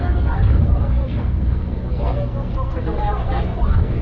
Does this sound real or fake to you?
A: fake